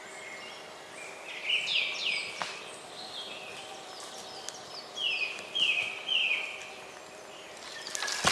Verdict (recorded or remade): recorded